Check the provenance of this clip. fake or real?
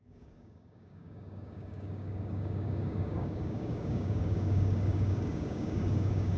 fake